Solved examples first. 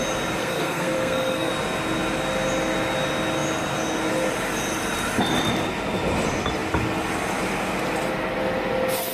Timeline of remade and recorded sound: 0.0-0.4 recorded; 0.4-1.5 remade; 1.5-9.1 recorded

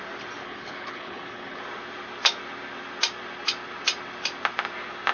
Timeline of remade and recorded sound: 0.0-0.4 recorded; 0.4-1.6 remade; 1.6-5.1 recorded

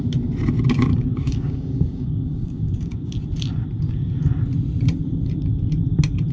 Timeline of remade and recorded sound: 0.0-0.9 recorded; 0.9-3.1 remade; 3.1-6.3 recorded

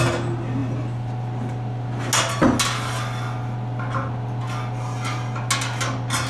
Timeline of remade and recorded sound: 0.0-6.3 recorded

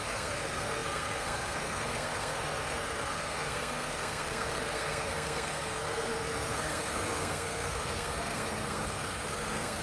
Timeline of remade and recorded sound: 0.0-9.8 remade

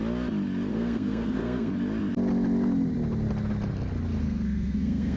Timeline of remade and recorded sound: 0.0-0.7 recorded; 0.7-1.7 remade; 1.7-4.2 recorded; 4.2-5.2 remade

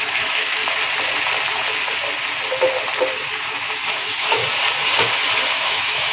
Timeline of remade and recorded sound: 0.0-0.6 remade; 0.6-3.3 recorded; 3.3-4.4 remade; 4.4-5.5 recorded; 5.5-6.1 remade

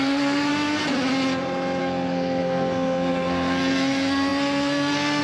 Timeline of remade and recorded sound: 0.0-0.5 remade; 0.5-1.8 recorded; 1.8-5.2 remade